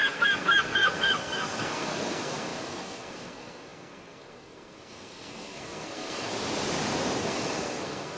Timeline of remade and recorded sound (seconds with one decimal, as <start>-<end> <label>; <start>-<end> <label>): 0.0-6.3 remade; 6.3-7.2 recorded; 7.2-8.2 remade

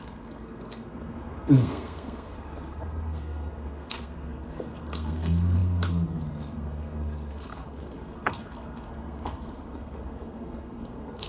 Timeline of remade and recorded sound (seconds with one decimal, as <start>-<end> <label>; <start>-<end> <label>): 0.0-11.3 remade